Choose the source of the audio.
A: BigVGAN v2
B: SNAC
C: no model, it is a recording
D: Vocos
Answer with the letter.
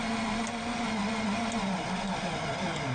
C